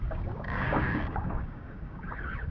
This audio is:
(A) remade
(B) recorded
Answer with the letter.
A